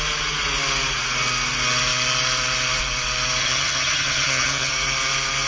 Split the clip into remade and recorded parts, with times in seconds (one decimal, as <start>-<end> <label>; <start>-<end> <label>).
0.0-3.4 recorded; 3.4-4.7 remade; 4.7-5.5 recorded

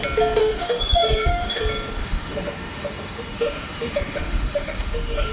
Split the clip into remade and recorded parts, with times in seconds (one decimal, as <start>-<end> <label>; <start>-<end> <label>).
0.0-0.4 recorded; 0.4-1.6 remade; 1.6-2.0 recorded; 2.0-5.3 remade